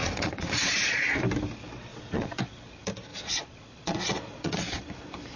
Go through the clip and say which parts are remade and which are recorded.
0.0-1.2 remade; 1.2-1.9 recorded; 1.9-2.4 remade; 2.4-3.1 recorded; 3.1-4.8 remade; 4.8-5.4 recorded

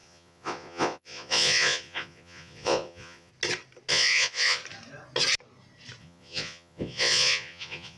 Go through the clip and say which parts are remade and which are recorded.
0.0-3.3 remade; 3.3-3.9 recorded; 3.9-4.6 remade; 4.6-6.0 recorded; 6.0-8.0 remade

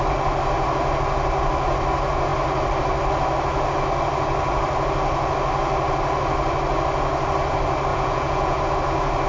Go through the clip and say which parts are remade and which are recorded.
0.0-7.9 recorded; 7.9-8.6 remade; 8.6-9.3 recorded